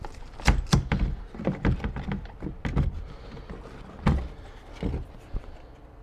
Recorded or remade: recorded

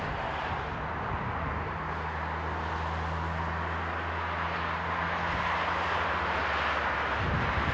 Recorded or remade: recorded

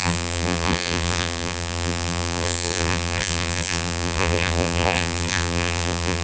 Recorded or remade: remade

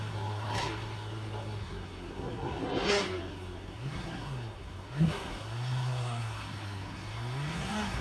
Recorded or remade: remade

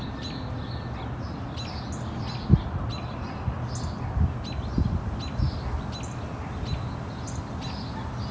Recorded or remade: recorded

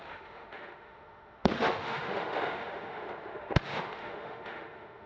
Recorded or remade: remade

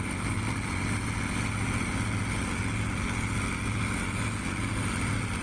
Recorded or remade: recorded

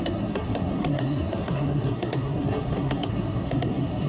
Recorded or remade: remade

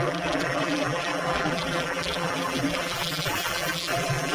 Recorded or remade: remade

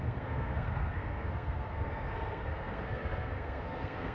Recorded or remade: remade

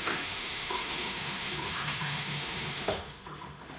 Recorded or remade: remade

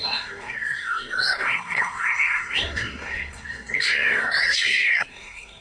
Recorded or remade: remade